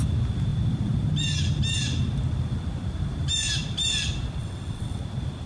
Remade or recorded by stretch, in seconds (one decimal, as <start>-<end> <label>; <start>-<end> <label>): 0.0-4.4 recorded; 4.4-5.0 remade; 5.0-5.5 recorded